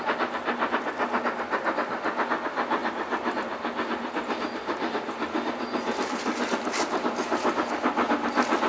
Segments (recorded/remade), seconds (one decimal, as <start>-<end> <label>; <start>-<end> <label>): 0.0-8.7 recorded